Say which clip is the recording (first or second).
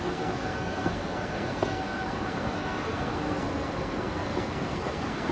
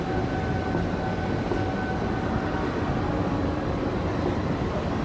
second